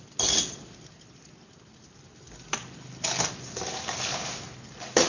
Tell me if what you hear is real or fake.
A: real